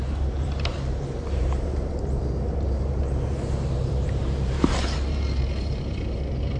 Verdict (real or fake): fake